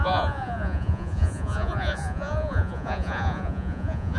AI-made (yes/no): yes